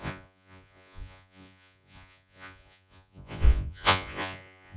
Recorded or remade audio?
remade